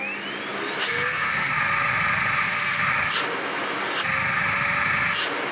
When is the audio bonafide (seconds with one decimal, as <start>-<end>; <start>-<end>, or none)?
0.0-0.9; 1.5-5.5